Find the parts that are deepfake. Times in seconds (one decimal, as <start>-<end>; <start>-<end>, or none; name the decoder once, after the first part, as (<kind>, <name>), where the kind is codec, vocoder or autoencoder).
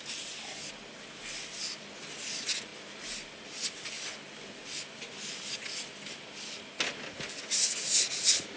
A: none